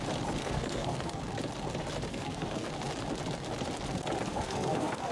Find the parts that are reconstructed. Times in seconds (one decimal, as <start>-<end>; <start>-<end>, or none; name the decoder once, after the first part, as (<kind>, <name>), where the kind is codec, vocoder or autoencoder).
0.4-1.2 (codec, SNAC); 2.1-2.7; 4.3-5.1